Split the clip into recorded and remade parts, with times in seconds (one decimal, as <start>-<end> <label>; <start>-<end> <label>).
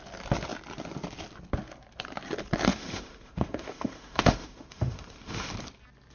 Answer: 0.0-2.7 recorded; 2.7-5.5 remade; 5.5-6.1 recorded